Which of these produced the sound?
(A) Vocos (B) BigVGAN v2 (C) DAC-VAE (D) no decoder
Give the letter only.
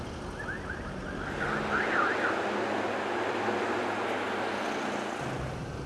D